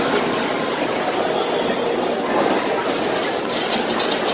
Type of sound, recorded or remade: recorded